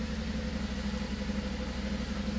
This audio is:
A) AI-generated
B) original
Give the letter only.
B